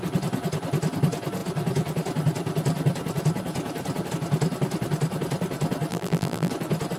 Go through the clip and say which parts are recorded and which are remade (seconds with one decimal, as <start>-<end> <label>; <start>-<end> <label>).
0.0-5.9 recorded; 5.9-6.5 remade; 6.5-7.0 recorded